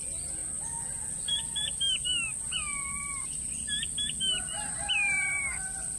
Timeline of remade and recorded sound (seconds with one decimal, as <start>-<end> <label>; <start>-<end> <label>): 0.0-6.0 recorded